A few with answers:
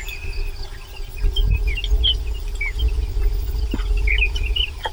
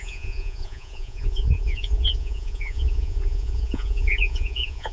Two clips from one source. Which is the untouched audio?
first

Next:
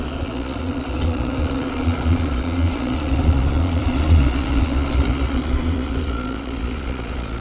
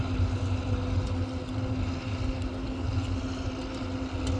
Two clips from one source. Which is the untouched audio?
second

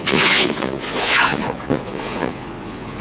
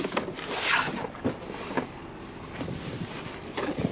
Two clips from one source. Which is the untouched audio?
second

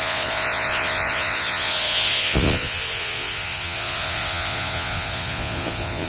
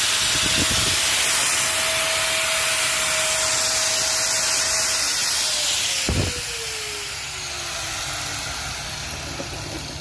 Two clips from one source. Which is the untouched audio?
second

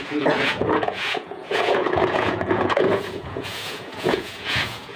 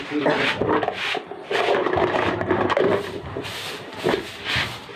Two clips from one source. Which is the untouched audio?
second